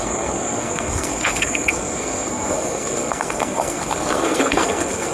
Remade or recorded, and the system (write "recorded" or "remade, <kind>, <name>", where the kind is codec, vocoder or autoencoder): remade, codec, SNAC